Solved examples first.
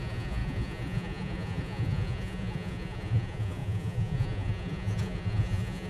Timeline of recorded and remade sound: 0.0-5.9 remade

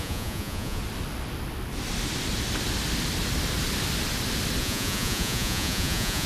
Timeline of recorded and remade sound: 0.0-0.8 remade; 0.8-4.6 recorded; 4.6-6.3 remade

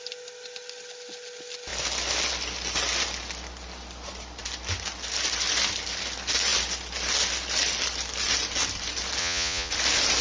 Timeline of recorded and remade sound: 0.0-9.2 recorded; 9.2-9.7 remade; 9.7-10.2 recorded

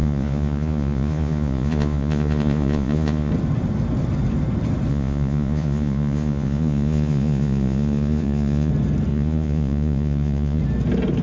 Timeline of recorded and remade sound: 0.0-3.3 remade; 3.3-4.9 recorded; 4.9-8.7 remade; 8.7-9.1 recorded; 9.1-10.6 remade; 10.6-11.2 recorded